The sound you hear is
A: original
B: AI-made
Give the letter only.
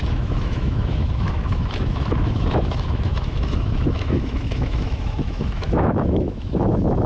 B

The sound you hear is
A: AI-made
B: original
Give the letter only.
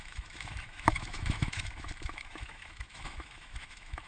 A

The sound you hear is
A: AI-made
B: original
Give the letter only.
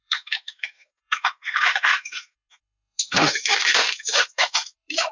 A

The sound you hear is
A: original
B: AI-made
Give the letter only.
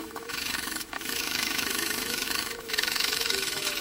B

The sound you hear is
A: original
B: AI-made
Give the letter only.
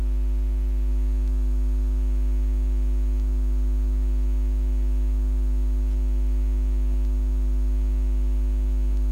A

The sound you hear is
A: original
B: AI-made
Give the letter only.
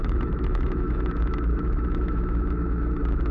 B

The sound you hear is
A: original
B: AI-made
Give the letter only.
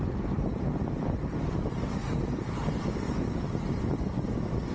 A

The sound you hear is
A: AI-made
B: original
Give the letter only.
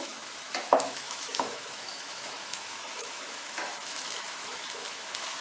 A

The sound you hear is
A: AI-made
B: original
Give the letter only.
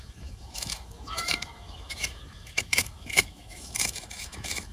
A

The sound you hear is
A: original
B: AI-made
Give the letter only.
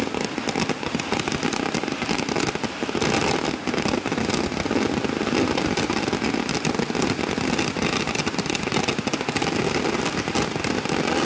A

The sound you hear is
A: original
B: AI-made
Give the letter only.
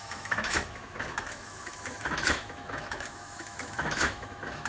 B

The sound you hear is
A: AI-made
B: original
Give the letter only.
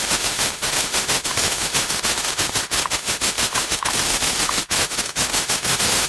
A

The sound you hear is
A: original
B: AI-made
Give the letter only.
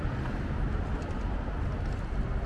A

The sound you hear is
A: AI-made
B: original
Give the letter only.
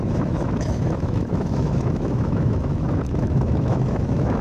A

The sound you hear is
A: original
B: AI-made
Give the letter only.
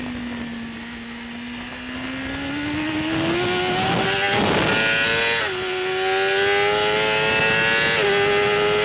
A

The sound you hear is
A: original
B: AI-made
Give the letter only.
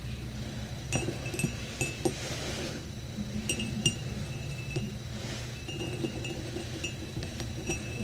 A